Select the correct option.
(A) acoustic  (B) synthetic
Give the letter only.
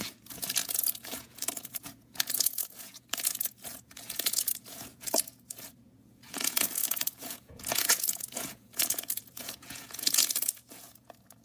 B